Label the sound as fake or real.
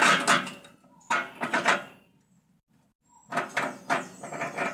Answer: real